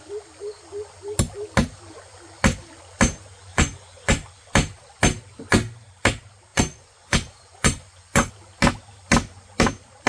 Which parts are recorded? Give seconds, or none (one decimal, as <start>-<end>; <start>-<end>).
0.0-3.5; 4.3-6.5; 8.3-10.1